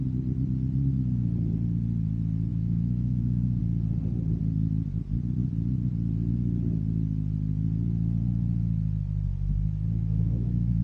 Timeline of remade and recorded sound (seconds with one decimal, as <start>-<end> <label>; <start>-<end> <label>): 0.0-2.5 recorded; 2.5-3.6 remade; 3.6-10.1 recorded; 10.1-10.8 remade